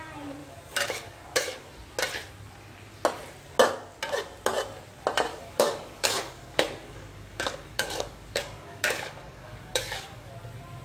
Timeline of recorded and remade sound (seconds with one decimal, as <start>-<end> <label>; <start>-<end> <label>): 0.0-0.4 recorded; 0.4-1.7 remade; 1.7-5.3 recorded; 5.3-10.3 remade; 10.3-10.8 recorded